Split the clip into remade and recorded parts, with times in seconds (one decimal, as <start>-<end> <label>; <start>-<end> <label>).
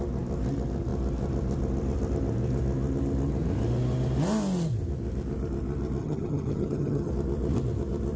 0.0-6.0 recorded; 6.0-7.1 remade; 7.1-8.2 recorded